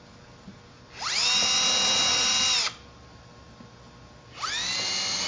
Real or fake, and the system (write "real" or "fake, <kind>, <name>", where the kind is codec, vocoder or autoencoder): real